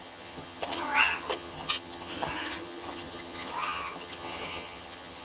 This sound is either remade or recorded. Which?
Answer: remade